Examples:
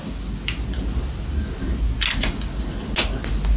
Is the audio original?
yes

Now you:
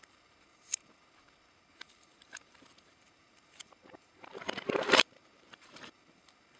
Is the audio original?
no